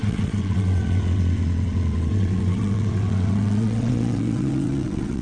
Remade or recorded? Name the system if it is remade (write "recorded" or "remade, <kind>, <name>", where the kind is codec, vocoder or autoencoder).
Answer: remade, vocoder, WaveNeXt